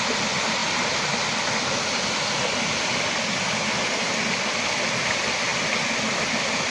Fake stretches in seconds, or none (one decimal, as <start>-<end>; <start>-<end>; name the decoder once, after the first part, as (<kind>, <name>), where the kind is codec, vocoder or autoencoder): none